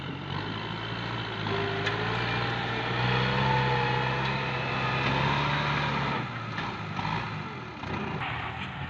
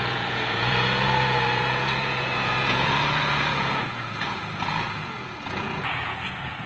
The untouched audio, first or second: first